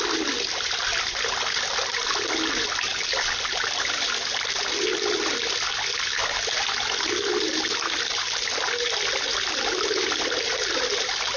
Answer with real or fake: real